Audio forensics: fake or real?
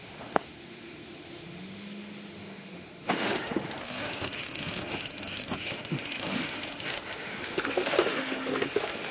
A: fake